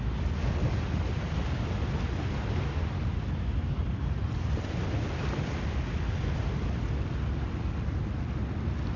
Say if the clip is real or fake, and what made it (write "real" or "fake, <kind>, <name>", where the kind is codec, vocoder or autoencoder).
real